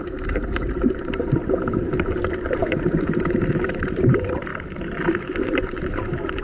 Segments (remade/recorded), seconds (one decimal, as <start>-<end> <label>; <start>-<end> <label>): 0.0-0.7 recorded; 0.7-4.5 remade; 4.5-5.7 recorded; 5.7-6.4 remade